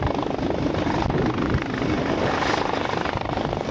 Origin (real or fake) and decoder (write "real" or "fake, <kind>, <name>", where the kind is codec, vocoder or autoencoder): real